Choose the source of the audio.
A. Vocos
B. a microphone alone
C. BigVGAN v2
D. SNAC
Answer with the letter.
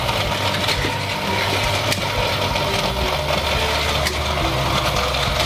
B